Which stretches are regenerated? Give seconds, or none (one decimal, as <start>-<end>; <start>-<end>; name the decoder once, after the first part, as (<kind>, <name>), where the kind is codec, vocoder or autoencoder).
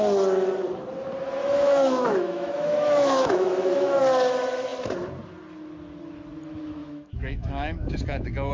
1.4-4.0 (autoencoder, DAC-VAE); 6.8-8.5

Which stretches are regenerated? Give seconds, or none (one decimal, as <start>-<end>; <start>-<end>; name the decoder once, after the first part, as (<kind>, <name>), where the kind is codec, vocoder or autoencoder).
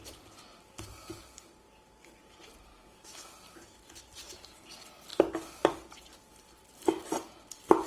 2.7-3.3 (autoencoder, DAC-VAE)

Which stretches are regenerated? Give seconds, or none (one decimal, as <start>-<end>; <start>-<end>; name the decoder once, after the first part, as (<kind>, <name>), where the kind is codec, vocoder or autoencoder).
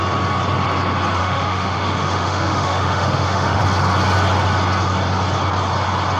1.2-3.6 (autoencoder, DAC-VAE)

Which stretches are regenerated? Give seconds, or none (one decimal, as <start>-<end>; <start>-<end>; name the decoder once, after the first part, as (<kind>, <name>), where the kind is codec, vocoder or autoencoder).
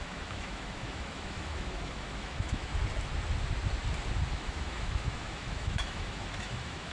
0.0-2.7 (autoencoder, DAC-VAE); 4.3-6.9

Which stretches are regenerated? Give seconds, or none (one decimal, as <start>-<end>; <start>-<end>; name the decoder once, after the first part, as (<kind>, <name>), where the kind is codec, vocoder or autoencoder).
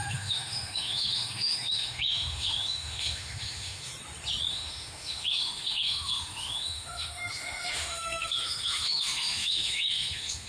0.0-3.9 (autoencoder, DAC-VAE); 4.5-10.5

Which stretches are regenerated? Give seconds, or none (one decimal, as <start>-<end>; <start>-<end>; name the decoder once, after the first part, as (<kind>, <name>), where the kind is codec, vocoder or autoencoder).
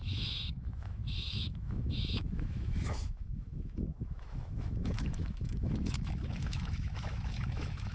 0.0-7.9 (autoencoder, DAC-VAE)